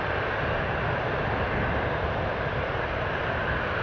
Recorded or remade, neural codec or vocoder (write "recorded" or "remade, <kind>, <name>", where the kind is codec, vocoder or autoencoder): recorded